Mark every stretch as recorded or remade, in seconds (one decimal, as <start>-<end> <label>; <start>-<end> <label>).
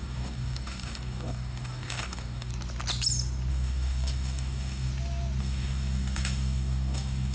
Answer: 0.0-2.5 remade; 2.5-3.5 recorded; 3.5-4.9 remade; 4.9-5.4 recorded; 5.4-7.3 remade